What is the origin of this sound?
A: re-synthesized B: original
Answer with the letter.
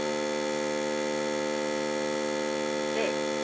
B